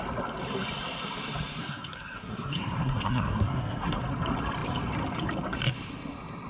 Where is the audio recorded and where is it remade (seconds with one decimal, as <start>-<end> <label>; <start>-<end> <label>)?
0.0-1.6 recorded; 1.6-4.0 remade; 4.0-6.5 recorded